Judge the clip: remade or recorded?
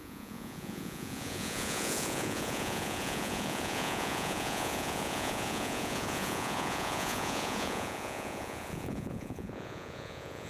remade